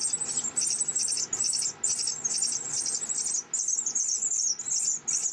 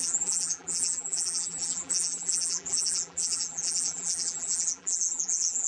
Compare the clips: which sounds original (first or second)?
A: first